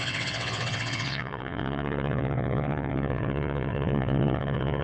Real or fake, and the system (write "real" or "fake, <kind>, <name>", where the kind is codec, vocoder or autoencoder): fake, vocoder, WaveNeXt